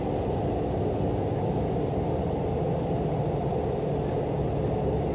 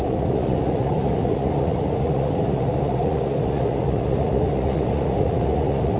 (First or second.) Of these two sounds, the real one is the first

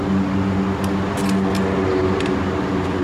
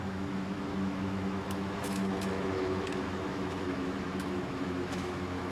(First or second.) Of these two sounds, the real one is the first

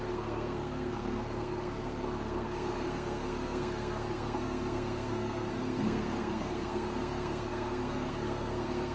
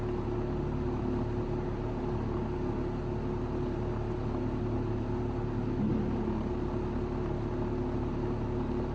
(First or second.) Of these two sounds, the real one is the second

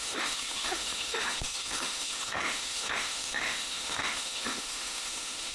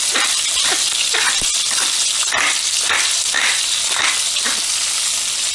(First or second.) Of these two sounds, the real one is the second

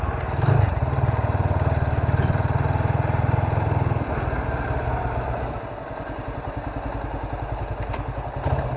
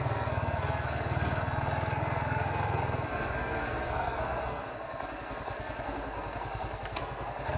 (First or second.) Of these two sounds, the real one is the first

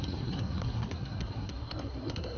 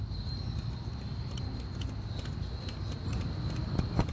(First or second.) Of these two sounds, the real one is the second